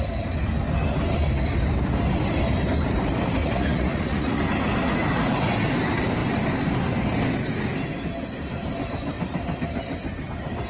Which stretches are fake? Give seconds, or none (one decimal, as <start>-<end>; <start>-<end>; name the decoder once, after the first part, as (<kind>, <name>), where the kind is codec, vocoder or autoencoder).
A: 3.4-4.4 (vocoder, Vocos)